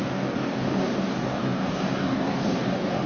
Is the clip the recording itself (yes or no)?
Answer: no